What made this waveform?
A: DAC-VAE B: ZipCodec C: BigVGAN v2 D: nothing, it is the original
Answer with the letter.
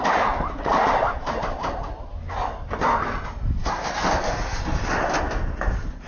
D